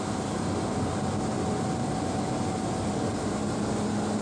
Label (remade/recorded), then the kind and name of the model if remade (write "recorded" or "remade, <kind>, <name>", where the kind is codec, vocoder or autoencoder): recorded